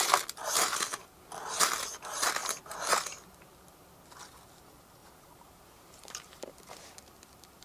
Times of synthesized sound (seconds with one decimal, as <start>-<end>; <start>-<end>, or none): 5.0-6.6